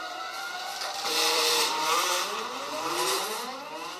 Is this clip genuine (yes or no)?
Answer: no